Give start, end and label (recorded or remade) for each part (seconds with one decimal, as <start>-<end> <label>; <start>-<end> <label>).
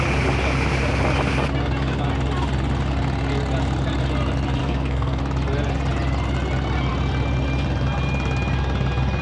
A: 0.0-4.6 recorded; 4.6-5.2 remade; 5.2-9.2 recorded